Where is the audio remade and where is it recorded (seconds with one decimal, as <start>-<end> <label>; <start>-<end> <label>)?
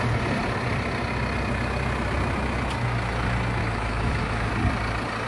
0.0-3.6 recorded; 3.6-4.5 remade; 4.5-5.3 recorded